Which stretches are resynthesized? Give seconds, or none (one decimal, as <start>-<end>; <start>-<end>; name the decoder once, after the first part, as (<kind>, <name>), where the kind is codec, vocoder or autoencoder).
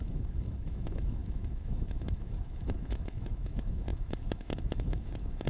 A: 0.0-5.5 (autoencoder, DAC-VAE)